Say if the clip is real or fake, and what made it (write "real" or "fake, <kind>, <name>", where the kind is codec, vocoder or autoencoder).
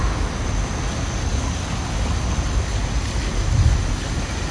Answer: real